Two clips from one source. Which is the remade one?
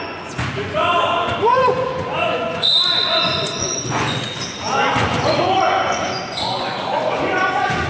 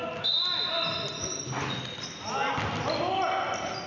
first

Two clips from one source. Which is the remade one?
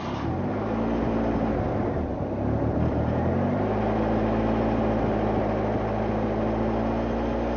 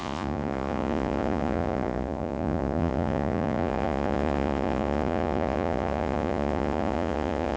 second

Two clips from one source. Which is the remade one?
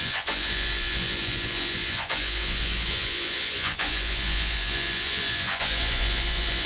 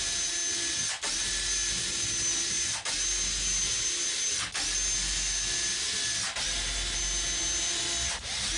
first